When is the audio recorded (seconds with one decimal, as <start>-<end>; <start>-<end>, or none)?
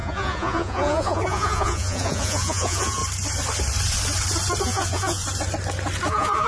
3.0-4.6; 5.2-6.1